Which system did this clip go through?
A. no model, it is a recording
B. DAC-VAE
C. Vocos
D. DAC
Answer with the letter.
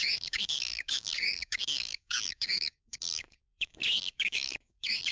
D